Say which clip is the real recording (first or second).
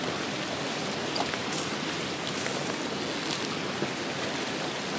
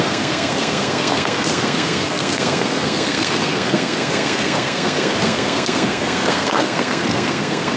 first